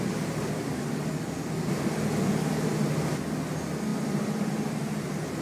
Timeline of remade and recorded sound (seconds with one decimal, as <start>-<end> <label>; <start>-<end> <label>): 0.0-3.9 recorded; 3.9-4.5 remade; 4.5-5.4 recorded